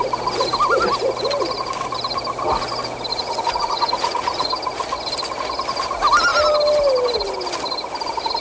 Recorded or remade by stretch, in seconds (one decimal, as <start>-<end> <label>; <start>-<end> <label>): 0.0-3.1 recorded; 3.1-4.5 remade; 4.5-8.4 recorded